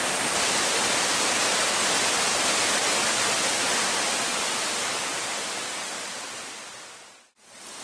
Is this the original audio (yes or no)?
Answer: yes